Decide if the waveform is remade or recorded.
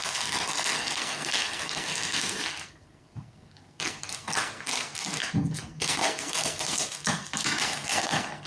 remade